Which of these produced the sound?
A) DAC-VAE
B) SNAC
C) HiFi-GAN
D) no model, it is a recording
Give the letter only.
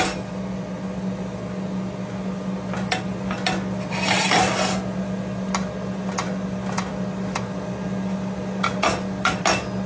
D